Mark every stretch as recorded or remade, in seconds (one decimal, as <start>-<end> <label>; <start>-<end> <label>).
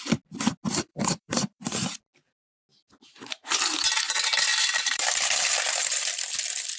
0.0-0.9 recorded; 0.9-2.0 remade; 2.0-4.5 recorded; 4.5-6.3 remade; 6.3-6.8 recorded